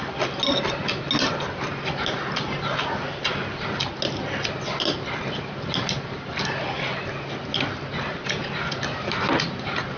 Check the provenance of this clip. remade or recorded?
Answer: recorded